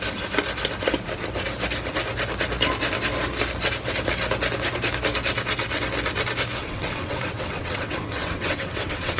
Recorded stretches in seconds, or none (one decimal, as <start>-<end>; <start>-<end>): 0.0-6.6